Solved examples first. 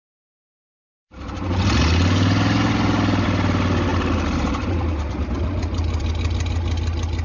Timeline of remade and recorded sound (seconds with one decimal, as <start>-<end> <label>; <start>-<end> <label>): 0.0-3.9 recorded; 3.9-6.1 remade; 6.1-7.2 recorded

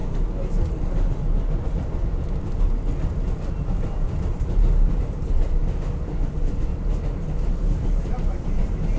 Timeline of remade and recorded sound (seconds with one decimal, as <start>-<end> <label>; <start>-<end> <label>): 0.0-5.0 recorded; 5.0-5.6 remade; 5.6-6.3 recorded; 6.3-6.7 remade; 6.7-8.0 recorded; 8.0-9.0 remade

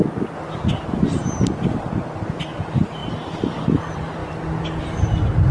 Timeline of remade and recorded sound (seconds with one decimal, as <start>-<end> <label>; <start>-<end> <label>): 0.0-5.5 recorded

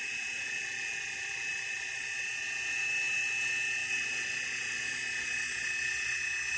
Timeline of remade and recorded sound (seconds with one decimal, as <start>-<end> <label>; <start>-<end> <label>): 0.0-1.5 recorded; 1.5-2.2 remade; 2.2-6.6 recorded